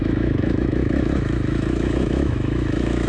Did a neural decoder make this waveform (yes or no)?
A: yes